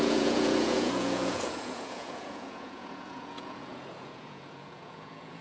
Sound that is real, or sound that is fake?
fake